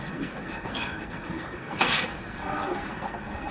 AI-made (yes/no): yes